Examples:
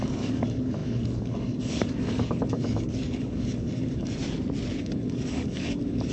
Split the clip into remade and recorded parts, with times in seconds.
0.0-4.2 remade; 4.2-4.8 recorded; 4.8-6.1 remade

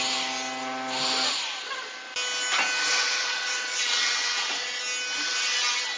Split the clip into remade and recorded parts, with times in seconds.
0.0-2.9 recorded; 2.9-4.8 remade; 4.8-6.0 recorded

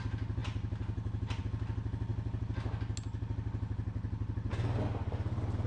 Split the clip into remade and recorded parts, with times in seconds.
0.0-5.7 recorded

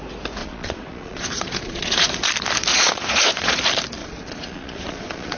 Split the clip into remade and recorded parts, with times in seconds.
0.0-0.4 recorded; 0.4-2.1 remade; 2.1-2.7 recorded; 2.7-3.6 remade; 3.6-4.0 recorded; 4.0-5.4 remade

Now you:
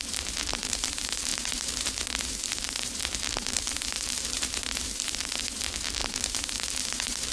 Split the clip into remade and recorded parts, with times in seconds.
0.0-7.3 remade

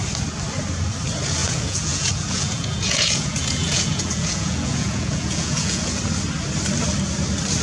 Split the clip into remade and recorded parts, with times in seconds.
0.0-1.4 recorded; 1.4-6.0 remade; 6.0-7.6 recorded

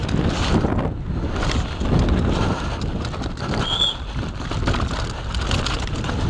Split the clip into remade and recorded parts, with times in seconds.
0.0-6.3 recorded

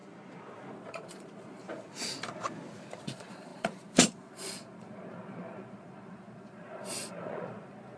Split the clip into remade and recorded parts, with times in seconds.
0.0-0.7 recorded; 0.7-1.6 remade; 1.6-3.0 recorded; 3.0-8.0 remade